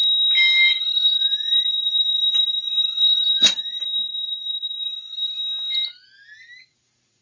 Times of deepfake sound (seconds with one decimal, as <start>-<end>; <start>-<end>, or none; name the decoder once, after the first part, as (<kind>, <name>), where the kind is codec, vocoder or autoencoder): 0.7-5.4 (vocoder, Vocos); 6.7-7.2